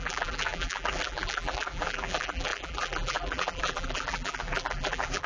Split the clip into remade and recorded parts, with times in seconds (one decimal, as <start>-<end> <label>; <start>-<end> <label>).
0.0-5.3 remade